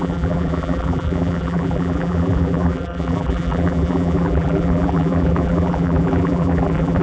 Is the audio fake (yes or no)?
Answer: yes